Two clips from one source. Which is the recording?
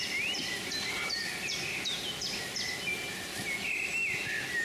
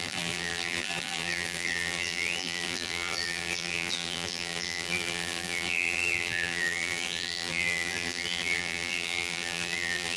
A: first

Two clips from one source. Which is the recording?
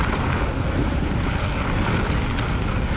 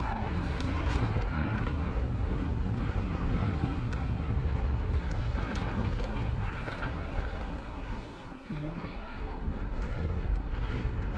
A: first